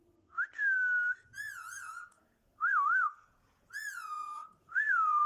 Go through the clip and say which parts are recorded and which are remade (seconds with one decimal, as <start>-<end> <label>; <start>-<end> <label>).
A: 0.0-1.2 recorded; 1.2-5.3 remade